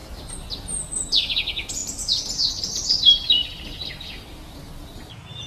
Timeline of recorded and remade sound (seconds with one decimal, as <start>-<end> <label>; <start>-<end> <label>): 0.0-5.5 recorded